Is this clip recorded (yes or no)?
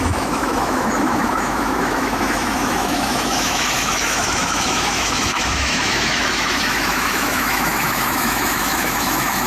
no